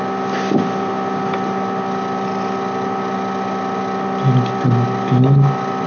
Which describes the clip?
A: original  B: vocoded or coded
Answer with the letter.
A